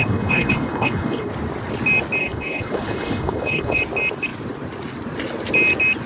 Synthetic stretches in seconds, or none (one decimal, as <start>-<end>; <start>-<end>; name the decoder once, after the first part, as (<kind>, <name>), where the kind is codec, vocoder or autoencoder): 0.0-1.3 (codec, HILCodec); 2.2-3.8